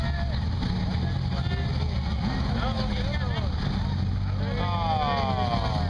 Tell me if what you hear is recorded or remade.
recorded